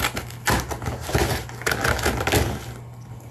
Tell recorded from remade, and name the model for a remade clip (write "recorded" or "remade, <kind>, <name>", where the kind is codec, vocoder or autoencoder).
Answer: recorded